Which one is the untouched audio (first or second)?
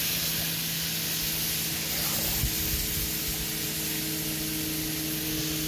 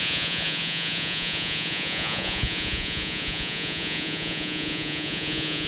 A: first